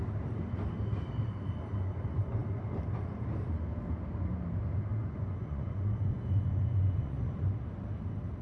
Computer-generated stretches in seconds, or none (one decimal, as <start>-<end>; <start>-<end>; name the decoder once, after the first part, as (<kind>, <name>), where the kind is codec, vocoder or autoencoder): 4.9-7.6 (vocoder, Vocos)